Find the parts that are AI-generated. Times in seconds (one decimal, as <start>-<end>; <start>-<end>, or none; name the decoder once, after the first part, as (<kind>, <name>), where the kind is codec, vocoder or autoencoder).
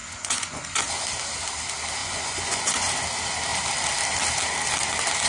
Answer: 0.0-0.8 (vocoder, Vocos); 2.0-2.9